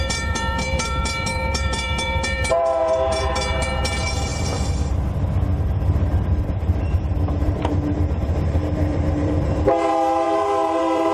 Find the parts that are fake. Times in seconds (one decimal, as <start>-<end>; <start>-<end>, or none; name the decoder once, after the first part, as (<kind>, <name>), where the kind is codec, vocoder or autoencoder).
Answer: 0.0-4.3 (vocoder, BigVGAN v2); 5.6-11.1

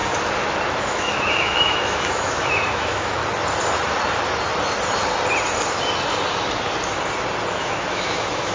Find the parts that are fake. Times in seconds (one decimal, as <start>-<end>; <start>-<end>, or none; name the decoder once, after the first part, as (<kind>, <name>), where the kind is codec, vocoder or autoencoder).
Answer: 0.8-3.2 (autoencoder, DAC-VAE); 7.5-8.5

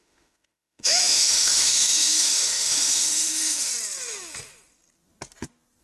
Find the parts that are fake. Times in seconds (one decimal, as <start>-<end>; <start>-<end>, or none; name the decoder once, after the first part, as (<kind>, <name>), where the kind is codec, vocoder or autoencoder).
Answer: 0.0-3.7 (autoencoder, DAC-VAE)

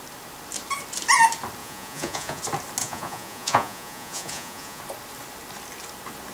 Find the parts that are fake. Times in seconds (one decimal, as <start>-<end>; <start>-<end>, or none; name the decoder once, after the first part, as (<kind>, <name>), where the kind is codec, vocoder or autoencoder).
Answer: 1.6-2.4 (vocoder, Vocos); 2.8-4.8

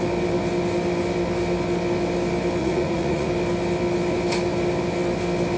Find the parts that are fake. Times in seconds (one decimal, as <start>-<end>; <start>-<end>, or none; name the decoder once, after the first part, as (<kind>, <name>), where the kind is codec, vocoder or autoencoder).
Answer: 2.6-3.3 (vocoder, Vocos)